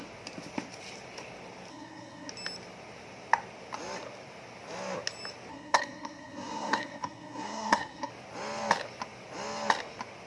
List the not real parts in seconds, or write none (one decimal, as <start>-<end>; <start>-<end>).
1.7-2.3; 5.5-8.1